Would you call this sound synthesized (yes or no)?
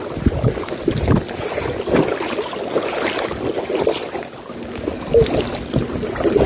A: no